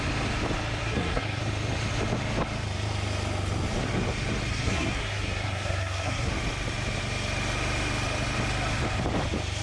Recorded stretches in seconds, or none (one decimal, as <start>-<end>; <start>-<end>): 0.0-0.8; 1.4-4.5; 6.3-9.6